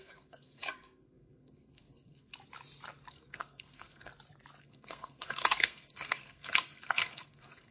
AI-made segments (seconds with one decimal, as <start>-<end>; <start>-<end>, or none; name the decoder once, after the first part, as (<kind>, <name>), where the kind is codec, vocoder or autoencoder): 0.0-2.3 (codec, SNAC); 3.1-4.1; 4.6-7.7

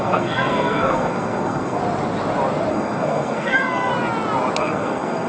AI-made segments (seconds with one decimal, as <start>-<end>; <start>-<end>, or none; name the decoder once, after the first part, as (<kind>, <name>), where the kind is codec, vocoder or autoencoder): 0.0-1.8 (codec, SNAC); 2.7-3.9; 4.6-5.3

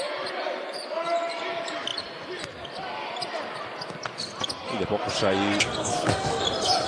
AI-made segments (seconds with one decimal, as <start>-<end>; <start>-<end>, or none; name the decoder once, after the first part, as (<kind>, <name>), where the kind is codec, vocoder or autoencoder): 5.8-6.4 (codec, SNAC)

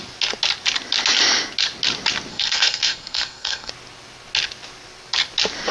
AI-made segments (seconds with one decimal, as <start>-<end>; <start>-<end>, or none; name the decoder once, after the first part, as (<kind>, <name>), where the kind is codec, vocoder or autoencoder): 2.3-3.7 (codec, SNAC)

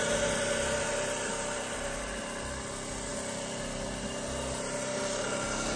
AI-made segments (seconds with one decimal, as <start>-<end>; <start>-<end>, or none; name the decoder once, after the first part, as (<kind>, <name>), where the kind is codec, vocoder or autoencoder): none

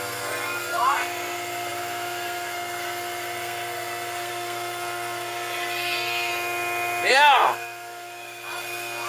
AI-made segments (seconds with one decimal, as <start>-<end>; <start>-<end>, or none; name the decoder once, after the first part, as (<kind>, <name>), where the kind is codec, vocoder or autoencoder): 0.0-6.3 (codec, SNAC); 7.1-9.1

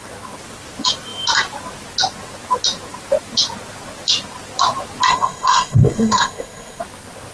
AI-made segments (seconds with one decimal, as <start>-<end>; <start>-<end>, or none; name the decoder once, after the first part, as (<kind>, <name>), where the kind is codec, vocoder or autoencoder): 5.1-6.8 (codec, SNAC)

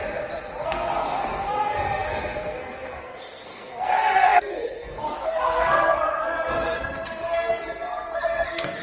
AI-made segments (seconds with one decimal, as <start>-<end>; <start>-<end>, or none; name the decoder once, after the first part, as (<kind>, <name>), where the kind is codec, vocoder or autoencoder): 0.6-8.8 (codec, SNAC)